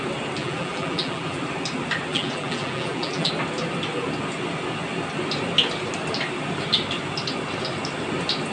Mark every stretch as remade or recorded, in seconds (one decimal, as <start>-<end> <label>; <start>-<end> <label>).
0.0-0.4 recorded; 0.4-1.4 remade; 1.4-2.1 recorded; 2.1-3.3 remade; 3.3-8.5 recorded